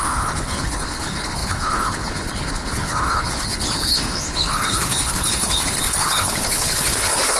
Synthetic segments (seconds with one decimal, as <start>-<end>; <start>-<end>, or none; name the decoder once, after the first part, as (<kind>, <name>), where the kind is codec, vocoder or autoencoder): 0.0-7.4 (codec, HILCodec)